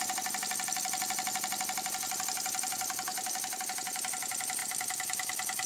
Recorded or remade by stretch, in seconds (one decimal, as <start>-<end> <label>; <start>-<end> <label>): 0.0-3.1 recorded; 3.1-3.6 remade; 3.6-4.6 recorded; 4.6-5.7 remade